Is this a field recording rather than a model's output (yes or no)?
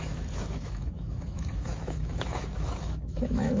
no